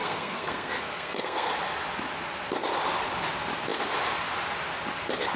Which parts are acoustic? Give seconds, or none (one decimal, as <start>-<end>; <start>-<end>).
1.5-5.4